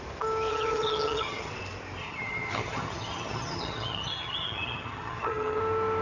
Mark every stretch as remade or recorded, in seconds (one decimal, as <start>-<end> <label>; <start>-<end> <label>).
0.0-0.5 recorded; 0.5-1.5 remade; 1.5-2.0 recorded; 2.0-5.6 remade; 5.6-6.0 recorded